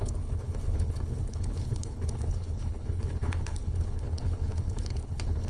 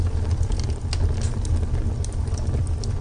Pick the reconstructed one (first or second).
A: first